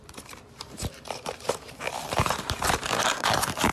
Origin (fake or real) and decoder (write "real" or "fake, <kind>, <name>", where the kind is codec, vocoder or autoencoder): fake, vocoder, BigVGAN v2